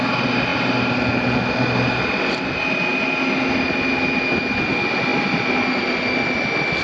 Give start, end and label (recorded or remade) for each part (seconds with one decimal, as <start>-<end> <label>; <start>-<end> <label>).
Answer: 0.0-6.8 recorded